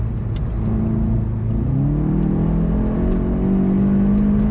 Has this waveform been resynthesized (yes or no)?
no